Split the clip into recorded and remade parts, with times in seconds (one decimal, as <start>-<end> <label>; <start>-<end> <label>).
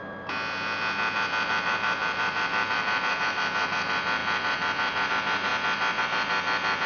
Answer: 0.0-1.5 recorded; 1.5-5.5 remade; 5.5-6.0 recorded; 6.0-6.9 remade